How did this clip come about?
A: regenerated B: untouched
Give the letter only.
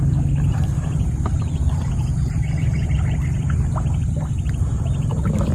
B